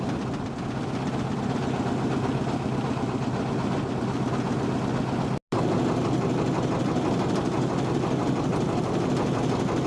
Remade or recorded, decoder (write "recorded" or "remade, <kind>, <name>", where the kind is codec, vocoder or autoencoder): recorded